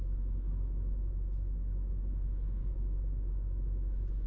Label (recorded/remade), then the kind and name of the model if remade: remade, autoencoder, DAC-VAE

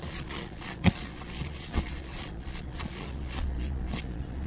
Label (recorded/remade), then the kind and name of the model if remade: remade, vocoder, Vocos